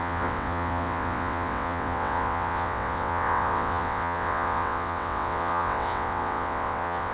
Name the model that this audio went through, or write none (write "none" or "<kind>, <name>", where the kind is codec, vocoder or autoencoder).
vocoder, WaveNeXt